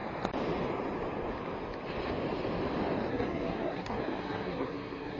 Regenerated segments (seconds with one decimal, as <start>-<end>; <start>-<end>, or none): 3.1-5.2